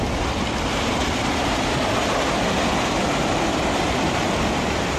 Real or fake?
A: real